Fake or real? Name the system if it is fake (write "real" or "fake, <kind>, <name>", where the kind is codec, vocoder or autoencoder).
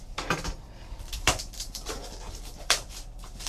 fake, vocoder, BigVGAN v2